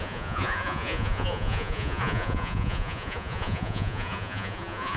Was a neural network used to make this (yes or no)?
yes